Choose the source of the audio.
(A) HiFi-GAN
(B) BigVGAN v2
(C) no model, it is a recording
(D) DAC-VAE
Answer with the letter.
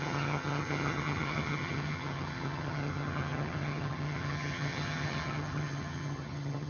A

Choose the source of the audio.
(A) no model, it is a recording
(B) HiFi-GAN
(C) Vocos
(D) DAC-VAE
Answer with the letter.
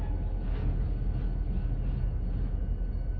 A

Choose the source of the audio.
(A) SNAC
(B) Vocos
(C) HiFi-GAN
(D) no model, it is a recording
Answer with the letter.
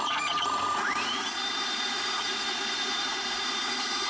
B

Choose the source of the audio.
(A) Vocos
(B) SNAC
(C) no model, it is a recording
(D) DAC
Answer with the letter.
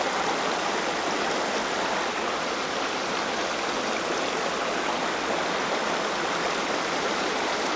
C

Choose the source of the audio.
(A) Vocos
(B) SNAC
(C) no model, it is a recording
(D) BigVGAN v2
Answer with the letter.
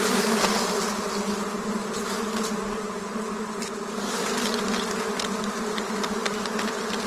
C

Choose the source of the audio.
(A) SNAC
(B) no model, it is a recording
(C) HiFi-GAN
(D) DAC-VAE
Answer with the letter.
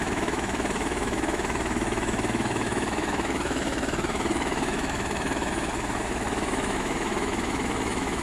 D